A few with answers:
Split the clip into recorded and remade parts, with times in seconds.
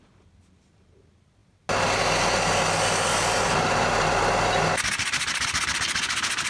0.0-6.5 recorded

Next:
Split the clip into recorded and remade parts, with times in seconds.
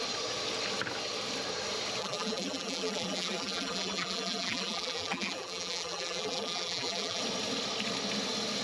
0.0-2.0 recorded; 2.0-7.2 remade; 7.2-8.6 recorded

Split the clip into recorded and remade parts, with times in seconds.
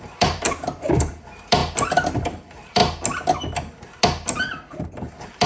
0.0-1.6 remade; 1.6-2.2 recorded; 2.2-2.8 remade; 2.8-4.4 recorded; 4.4-5.5 remade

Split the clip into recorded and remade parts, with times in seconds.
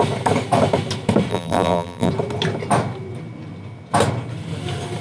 0.0-1.3 recorded; 1.3-2.1 remade; 2.1-5.0 recorded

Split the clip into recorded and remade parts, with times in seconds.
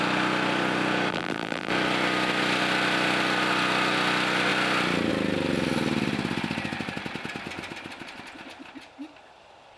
0.0-1.1 recorded; 1.1-1.7 remade; 1.7-9.8 recorded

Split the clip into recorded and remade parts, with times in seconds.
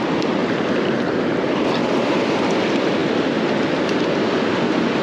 0.0-0.4 recorded; 0.4-1.4 remade; 1.4-1.8 recorded; 1.8-2.4 remade; 2.4-5.0 recorded